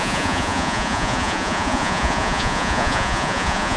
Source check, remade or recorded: remade